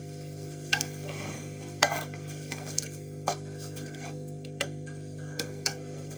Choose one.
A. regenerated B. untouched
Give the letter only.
A